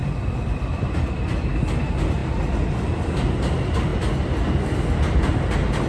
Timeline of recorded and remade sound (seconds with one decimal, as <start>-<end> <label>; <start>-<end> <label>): 0.0-0.8 remade; 0.8-5.9 recorded